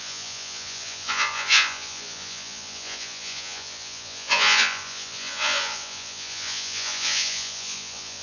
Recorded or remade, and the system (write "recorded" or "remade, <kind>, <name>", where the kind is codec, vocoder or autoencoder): remade, vocoder, Vocos